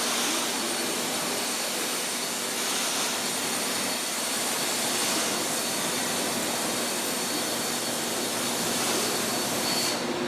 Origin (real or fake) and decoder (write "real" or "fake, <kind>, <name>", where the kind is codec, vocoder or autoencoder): real